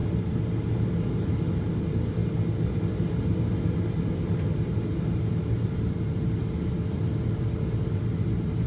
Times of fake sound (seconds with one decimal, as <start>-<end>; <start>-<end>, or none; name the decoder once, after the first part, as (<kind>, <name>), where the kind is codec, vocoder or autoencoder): none